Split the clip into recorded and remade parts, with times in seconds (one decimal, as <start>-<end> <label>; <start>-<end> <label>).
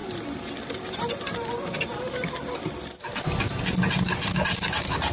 0.0-5.1 recorded